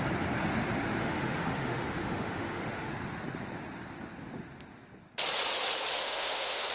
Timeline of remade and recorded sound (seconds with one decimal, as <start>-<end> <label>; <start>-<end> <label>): 0.0-1.0 recorded; 1.0-2.9 remade; 2.9-6.0 recorded; 6.0-6.7 remade